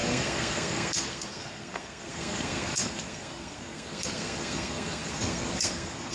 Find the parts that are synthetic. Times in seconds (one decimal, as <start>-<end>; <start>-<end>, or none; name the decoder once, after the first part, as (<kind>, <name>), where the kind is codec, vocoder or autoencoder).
0.0-6.1 (codec, SNAC)